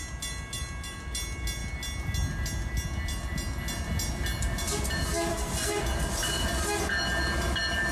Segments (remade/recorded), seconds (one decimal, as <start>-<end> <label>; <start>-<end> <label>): 0.0-5.3 recorded; 5.3-5.8 remade; 5.8-7.9 recorded